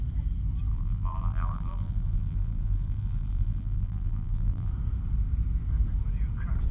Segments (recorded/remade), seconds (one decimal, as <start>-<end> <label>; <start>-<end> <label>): 0.0-0.7 recorded; 0.7-4.7 remade; 4.7-6.7 recorded